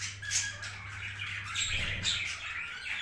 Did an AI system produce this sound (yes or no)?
no